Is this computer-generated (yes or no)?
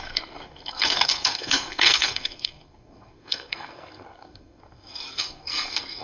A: yes